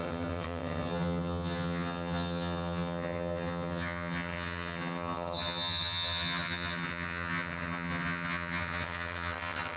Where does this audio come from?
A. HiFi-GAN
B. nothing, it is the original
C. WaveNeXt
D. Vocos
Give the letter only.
A